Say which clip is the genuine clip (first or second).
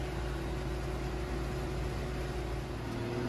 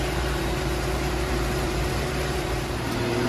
first